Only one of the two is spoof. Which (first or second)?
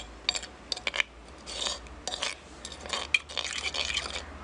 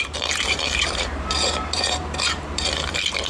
second